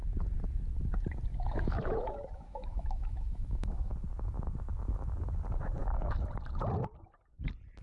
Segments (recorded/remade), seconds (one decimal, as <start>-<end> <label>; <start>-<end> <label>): 0.0-1.3 recorded; 1.3-3.9 remade; 3.9-7.8 recorded